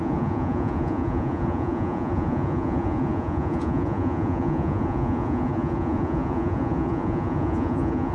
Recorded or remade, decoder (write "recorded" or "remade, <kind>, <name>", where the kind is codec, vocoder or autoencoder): remade, vocoder, Vocos